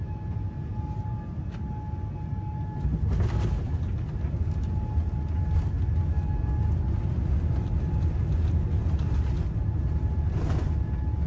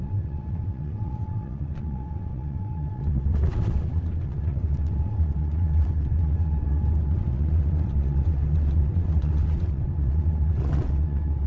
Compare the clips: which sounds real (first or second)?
first